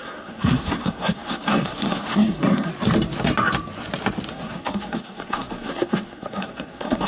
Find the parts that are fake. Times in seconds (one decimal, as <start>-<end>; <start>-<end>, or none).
0.0-2.7; 4.3-7.1

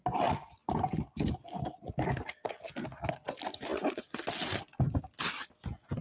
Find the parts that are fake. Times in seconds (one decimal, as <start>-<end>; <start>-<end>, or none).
none

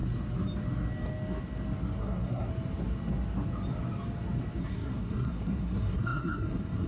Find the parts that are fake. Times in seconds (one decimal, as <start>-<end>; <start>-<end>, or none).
2.0-2.5; 4.6-6.9

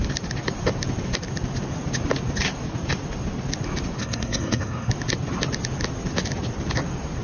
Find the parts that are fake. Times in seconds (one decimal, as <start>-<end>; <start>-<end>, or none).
4.0-4.9

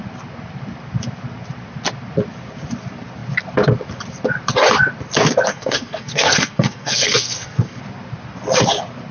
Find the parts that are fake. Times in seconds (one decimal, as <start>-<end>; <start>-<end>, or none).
5.5-7.8

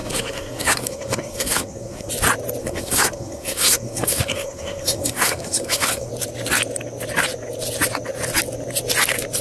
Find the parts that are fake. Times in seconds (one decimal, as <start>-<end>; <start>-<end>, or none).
0.0-2.1; 2.6-6.1

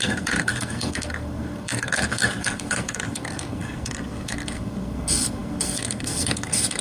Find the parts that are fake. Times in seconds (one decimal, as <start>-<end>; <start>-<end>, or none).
0.0-6.8